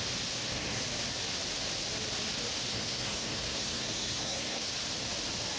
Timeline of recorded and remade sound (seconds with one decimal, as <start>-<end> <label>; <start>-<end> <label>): 0.0-2.7 recorded; 2.7-4.7 remade; 4.7-5.6 recorded